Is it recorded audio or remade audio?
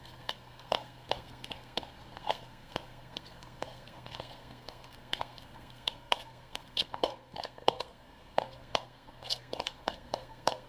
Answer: remade